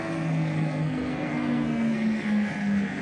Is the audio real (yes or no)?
no